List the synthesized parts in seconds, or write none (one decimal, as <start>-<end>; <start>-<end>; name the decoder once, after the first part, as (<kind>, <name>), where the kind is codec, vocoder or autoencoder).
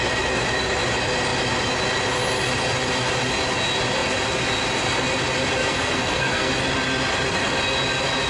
5.6-6.6 (codec, SNAC)